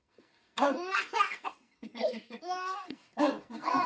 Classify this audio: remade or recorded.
remade